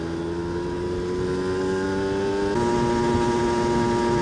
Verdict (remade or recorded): recorded